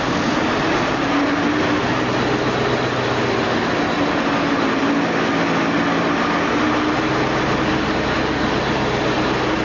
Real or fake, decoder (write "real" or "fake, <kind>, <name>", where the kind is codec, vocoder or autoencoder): real